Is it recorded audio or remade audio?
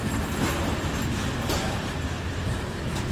recorded